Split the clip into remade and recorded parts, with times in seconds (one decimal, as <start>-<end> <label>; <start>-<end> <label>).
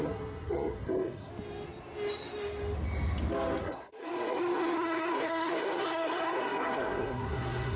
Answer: 0.0-1.3 remade; 1.3-3.6 recorded; 3.6-7.8 remade